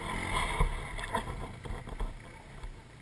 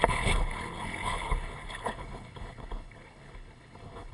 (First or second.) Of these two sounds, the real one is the first